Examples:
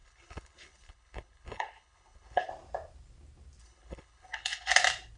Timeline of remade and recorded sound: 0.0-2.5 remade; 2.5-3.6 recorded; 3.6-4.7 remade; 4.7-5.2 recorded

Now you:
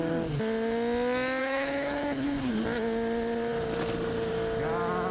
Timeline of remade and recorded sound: 0.0-1.4 recorded; 1.4-2.5 remade; 2.5-5.1 recorded

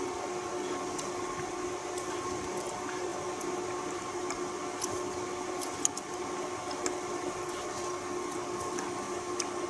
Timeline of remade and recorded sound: 0.0-9.7 recorded

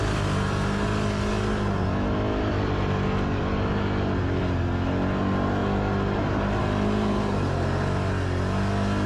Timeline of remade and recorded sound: 0.0-9.1 recorded

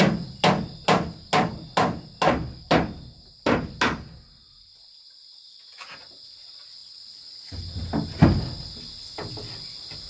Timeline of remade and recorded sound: 0.0-10.1 recorded

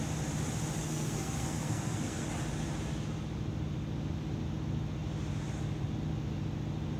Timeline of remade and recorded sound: 0.0-0.8 recorded; 0.8-2.3 remade; 2.3-7.0 recorded

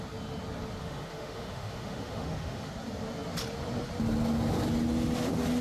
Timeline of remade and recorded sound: 0.0-0.8 recorded; 0.8-2.7 remade; 2.7-5.6 recorded

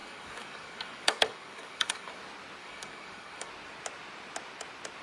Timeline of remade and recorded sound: 0.0-2.2 remade; 2.2-2.6 recorded; 2.6-3.5 remade; 3.5-5.0 recorded